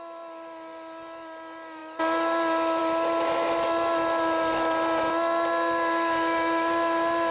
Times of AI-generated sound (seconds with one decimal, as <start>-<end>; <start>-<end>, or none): none